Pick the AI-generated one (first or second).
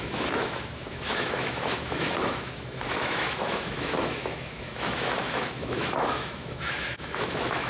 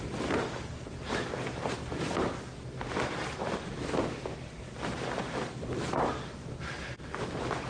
first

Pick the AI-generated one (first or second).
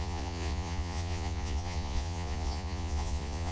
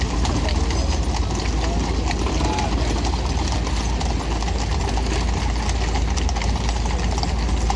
first